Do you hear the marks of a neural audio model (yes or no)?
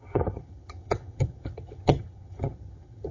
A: yes